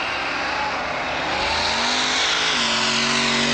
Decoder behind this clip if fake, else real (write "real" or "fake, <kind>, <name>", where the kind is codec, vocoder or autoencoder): real